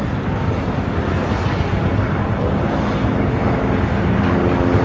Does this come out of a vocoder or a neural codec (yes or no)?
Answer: no